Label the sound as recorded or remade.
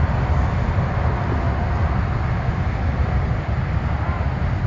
recorded